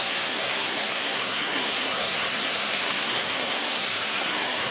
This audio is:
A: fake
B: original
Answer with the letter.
A